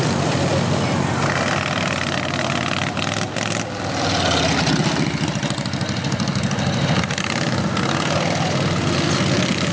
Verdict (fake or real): real